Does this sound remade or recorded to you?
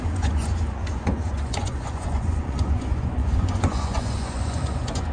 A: remade